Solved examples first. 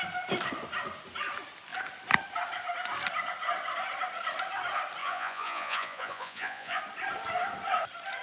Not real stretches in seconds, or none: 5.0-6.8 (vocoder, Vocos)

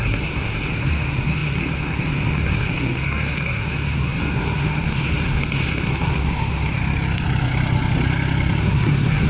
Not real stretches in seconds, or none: 0.0-6.8 (codec, SNAC); 8.6-9.3

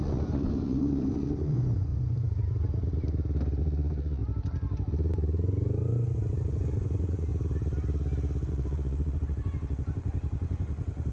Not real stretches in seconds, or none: 0.0-1.9 (vocoder, Vocos); 3.6-4.2; 4.9-7.3; 8.5-11.1

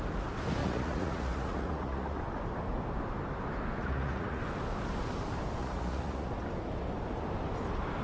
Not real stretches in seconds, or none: 0.6-2.2 (vocoder, Vocos); 3.8-4.4; 5.6-6.3

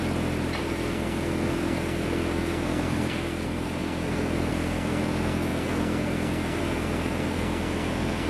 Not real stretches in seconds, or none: 0.6-8.3 (codec, SNAC)